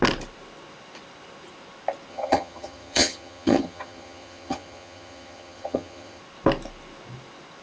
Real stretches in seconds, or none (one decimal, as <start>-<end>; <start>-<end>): 0.0-2.1; 6.2-7.6